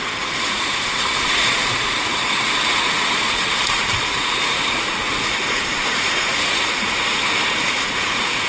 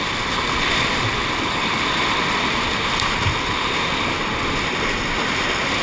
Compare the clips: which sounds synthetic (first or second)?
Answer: first